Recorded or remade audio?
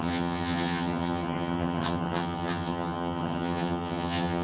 remade